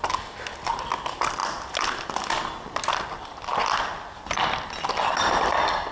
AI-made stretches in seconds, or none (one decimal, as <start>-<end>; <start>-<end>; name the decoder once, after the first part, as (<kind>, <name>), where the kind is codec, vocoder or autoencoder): none